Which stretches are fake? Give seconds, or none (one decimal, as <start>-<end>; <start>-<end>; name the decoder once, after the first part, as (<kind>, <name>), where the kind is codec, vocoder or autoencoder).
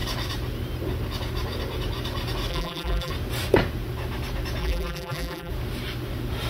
2.5-3.1 (vocoder, BigVGAN v2); 4.6-5.5